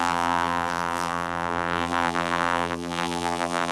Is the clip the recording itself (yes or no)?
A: no